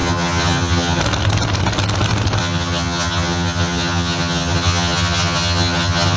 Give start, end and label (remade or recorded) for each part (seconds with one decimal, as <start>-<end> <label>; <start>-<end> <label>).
0.0-1.0 remade; 1.0-2.4 recorded; 2.4-6.2 remade